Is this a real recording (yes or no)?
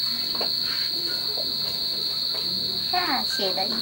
yes